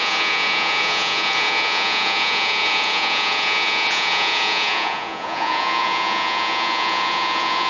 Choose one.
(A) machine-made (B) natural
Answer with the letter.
A